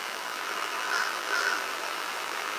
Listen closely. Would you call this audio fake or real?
fake